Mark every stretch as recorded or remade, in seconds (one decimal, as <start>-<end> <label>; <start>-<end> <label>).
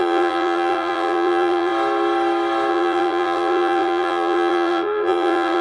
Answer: 0.0-1.7 remade; 1.7-2.7 recorded; 2.7-5.6 remade